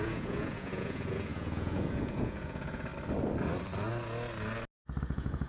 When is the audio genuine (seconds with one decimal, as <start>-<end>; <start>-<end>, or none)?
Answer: 2.9-5.0